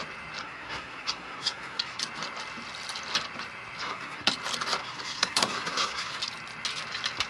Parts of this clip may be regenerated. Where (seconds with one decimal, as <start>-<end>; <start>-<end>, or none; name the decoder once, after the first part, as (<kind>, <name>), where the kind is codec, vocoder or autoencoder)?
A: 0.4-2.0 (codec, SNAC); 3.8-4.3; 4.8-6.2